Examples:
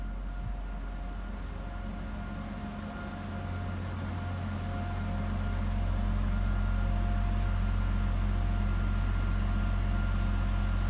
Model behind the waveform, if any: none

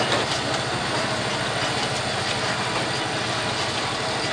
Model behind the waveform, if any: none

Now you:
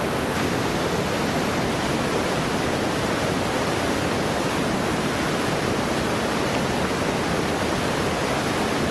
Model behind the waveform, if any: none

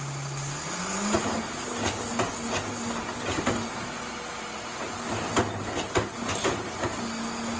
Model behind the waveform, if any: none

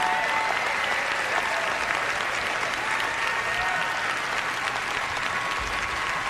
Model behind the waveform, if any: none